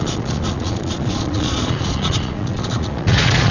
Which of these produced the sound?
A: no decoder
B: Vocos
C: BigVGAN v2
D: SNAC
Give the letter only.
B